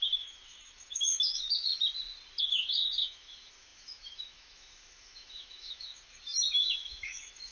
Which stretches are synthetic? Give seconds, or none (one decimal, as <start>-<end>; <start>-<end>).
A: 0.0-1.7; 2.4-7.5